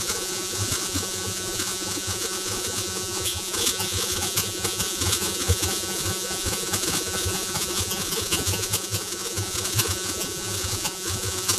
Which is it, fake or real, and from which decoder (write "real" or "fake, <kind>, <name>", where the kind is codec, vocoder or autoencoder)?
fake, vocoder, Vocos